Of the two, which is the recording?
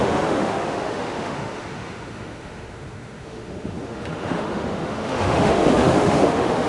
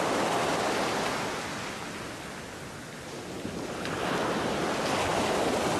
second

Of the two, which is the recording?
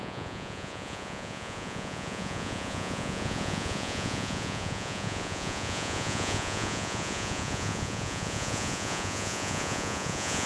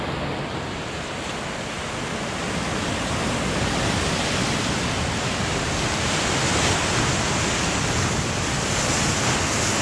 second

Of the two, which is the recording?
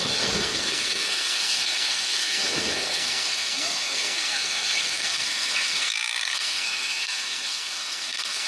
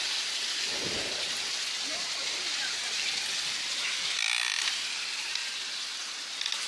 second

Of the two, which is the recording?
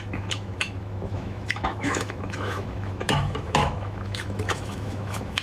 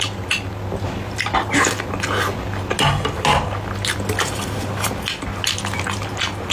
second